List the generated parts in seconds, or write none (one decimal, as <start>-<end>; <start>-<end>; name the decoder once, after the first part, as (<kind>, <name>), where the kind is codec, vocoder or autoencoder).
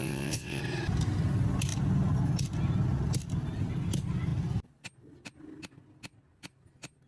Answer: 0.0-0.6 (vocoder, WaveNeXt)